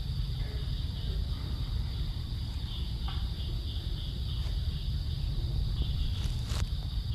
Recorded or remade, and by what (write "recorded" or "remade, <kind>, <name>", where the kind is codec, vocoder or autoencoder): recorded